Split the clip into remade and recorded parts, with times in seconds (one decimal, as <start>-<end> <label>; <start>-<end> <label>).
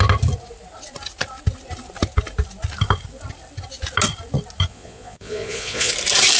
0.0-4.7 recorded; 4.7-5.9 remade; 5.9-6.4 recorded